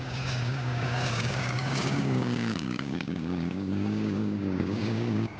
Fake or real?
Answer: fake